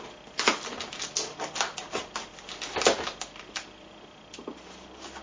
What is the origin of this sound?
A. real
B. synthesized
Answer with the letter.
A